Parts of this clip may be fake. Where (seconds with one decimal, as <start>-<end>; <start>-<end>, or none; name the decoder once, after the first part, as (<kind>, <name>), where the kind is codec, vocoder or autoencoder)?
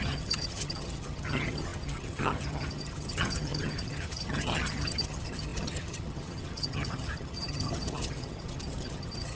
0.0-9.4 (vocoder, HiFi-GAN)